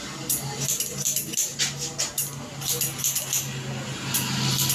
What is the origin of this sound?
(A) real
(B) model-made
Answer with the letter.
A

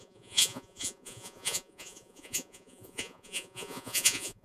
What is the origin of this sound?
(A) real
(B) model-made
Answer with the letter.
B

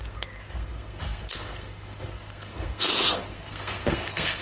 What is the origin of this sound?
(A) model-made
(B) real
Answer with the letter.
A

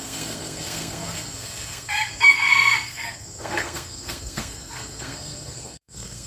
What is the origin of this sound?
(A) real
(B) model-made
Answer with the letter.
B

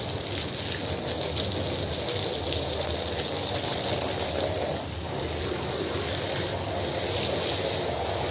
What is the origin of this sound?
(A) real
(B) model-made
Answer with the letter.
A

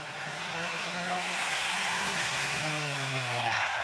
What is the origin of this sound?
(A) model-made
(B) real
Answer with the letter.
A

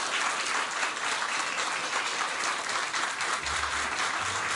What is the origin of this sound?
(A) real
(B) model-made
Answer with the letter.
B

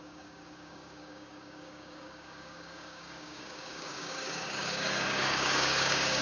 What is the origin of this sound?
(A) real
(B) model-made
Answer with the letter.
B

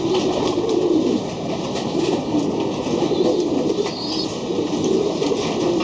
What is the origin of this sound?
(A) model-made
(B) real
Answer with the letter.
B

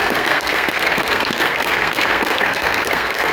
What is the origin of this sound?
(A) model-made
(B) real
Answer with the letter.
A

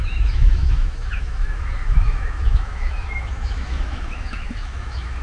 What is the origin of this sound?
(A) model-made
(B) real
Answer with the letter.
A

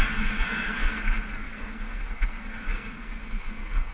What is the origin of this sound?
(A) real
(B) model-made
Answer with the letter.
B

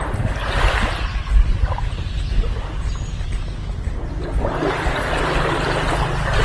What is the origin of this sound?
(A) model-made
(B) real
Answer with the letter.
B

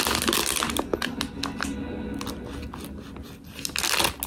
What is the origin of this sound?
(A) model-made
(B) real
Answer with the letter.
B